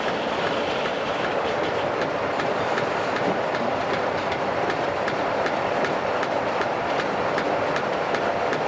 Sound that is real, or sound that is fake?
fake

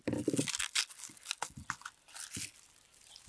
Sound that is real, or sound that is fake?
real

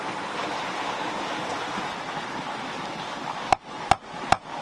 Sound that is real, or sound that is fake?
real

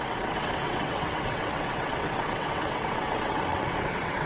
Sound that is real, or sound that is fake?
fake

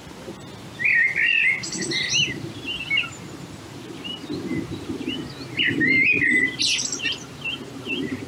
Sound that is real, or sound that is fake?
real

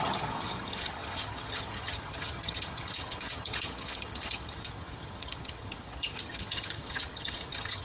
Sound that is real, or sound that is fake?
fake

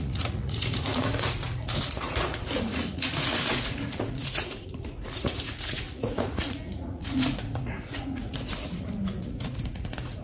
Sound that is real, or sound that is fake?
fake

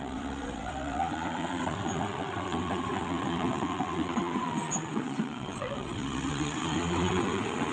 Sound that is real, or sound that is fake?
fake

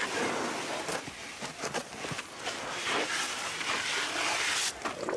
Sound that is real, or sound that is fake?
real